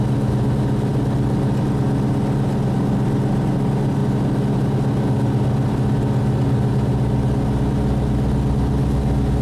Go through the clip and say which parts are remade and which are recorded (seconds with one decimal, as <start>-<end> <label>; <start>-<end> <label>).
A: 0.0-9.4 recorded